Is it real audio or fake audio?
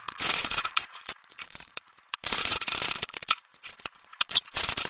fake